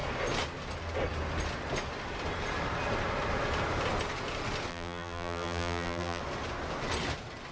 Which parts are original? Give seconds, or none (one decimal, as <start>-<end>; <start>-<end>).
0.0-4.7; 6.2-7.5